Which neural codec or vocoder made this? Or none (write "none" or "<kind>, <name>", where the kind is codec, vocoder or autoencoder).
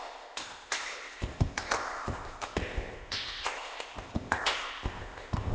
codec, ZipCodec